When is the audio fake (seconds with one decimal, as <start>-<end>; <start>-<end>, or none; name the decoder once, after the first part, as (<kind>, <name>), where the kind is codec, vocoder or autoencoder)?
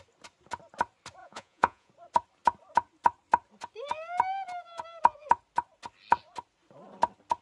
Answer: 1.2-1.9 (vocoder, Vocos)